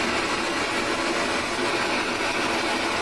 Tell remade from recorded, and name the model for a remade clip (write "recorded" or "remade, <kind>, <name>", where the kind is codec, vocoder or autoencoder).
recorded